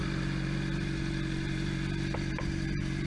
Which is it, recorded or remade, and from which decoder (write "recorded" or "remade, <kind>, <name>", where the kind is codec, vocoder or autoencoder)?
recorded